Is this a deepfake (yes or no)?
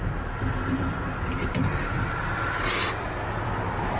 no